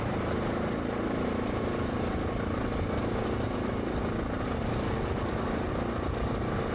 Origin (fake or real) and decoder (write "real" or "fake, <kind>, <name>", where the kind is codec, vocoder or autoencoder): real